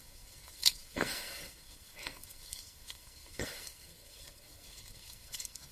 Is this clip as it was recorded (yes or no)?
no